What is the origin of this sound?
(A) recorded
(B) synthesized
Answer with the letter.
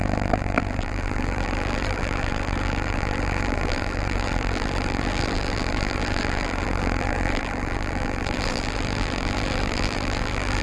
B